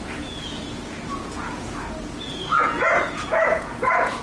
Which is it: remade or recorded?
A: remade